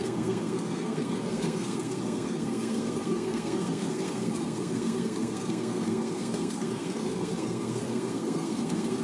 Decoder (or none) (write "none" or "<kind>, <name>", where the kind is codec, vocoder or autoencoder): codec, SNAC